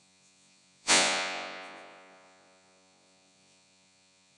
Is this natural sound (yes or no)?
no